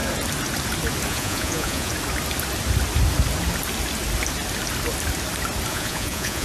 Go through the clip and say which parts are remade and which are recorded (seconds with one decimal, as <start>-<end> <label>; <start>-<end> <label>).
0.0-1.1 recorded; 1.1-1.9 remade; 1.9-5.7 recorded; 5.7-6.4 remade